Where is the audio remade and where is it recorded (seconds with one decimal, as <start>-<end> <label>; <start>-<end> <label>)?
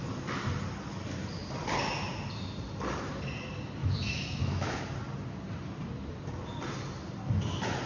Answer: 0.0-3.8 recorded; 3.8-4.8 remade; 4.8-7.9 recorded